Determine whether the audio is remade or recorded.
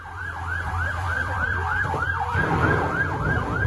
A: remade